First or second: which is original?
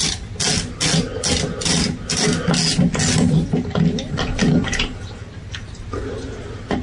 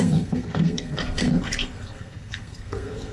first